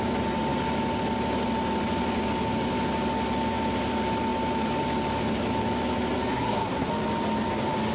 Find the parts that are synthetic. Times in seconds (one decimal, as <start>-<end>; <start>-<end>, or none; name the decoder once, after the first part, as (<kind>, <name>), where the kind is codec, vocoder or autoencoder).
6.3-6.9 (codec, SNAC)